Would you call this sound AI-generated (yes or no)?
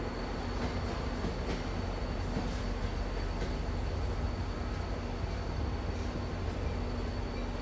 no